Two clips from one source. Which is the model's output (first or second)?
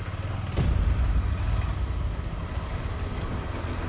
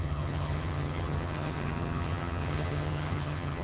second